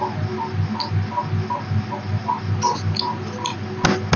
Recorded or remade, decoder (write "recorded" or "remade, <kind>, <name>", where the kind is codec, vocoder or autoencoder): recorded